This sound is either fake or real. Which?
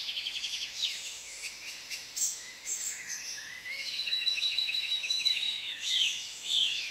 fake